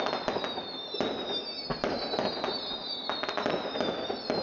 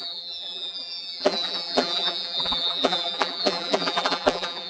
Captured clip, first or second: first